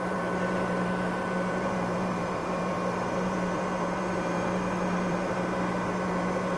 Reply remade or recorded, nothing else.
remade